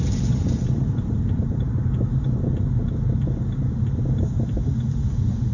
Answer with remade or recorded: recorded